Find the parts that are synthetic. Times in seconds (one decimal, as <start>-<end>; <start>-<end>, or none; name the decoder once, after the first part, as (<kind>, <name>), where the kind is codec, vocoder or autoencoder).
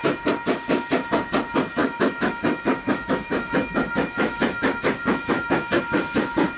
1.8-5.8 (autoencoder, DAC-VAE)